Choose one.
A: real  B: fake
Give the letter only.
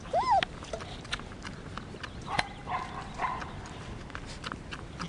A